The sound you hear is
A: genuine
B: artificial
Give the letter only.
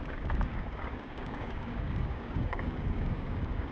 B